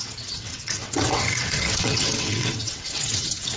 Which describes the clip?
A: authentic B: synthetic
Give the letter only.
B